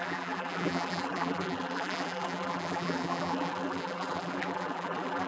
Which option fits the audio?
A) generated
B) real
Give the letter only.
A